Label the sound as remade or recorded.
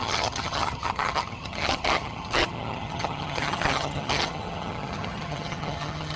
remade